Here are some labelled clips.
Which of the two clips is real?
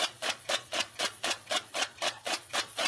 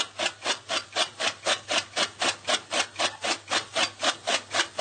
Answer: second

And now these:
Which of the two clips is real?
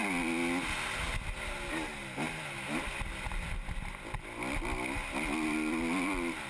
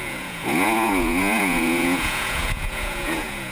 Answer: first